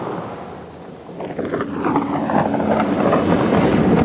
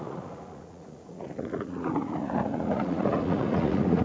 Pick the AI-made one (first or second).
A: second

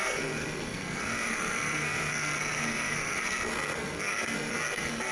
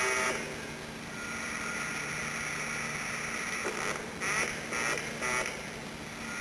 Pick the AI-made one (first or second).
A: first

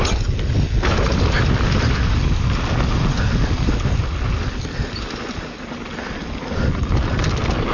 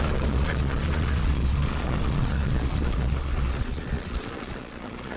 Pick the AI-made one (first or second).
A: second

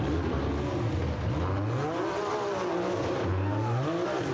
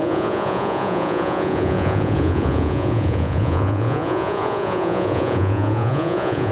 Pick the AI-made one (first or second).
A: second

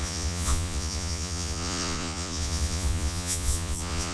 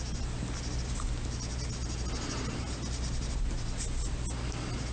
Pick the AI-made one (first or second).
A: first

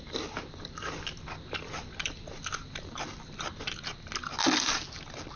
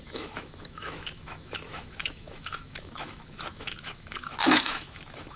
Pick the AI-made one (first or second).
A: second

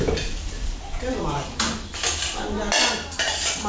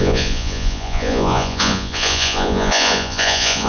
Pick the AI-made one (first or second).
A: second